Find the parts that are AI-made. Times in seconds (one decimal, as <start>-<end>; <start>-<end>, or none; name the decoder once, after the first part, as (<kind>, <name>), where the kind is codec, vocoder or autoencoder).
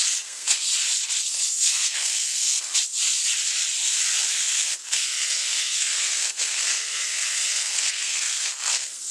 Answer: 0.0-0.7 (codec, SNAC); 1.2-2.7; 4.3-9.1